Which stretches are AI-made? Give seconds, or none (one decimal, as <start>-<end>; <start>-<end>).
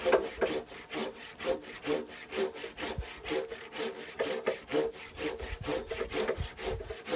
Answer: 1.0-5.3; 5.7-6.5